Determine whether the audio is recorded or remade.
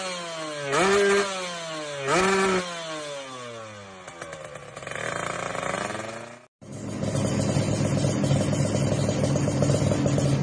recorded